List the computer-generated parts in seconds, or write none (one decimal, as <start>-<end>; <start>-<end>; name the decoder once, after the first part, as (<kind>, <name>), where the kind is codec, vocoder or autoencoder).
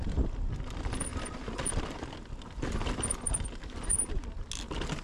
none